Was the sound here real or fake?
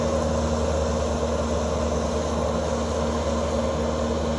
real